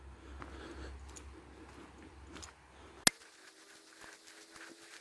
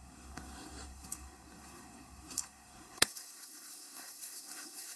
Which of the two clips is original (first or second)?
first